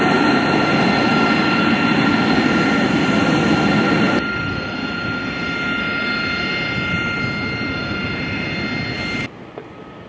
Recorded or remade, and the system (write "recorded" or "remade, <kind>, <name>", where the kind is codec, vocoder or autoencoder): recorded